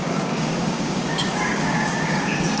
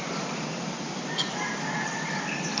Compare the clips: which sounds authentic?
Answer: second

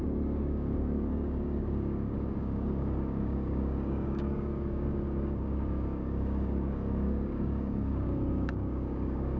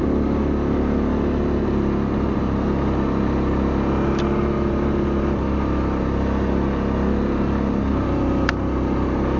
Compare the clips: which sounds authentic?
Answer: second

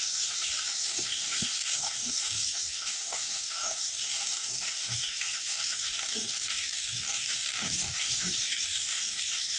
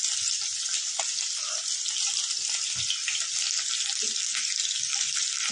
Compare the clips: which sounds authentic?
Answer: second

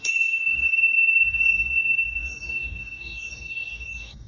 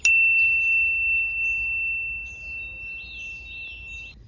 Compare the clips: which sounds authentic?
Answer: second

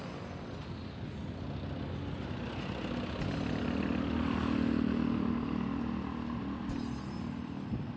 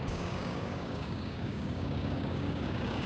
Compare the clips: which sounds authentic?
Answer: first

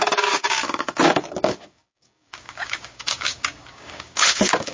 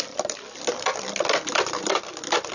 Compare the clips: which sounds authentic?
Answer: second